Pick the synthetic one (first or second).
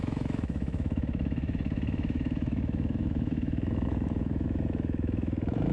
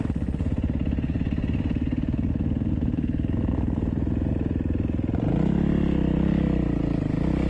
first